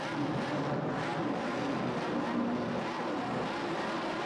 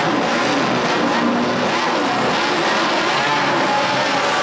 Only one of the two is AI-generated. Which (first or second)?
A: first